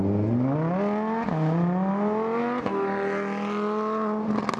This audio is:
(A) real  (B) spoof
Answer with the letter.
A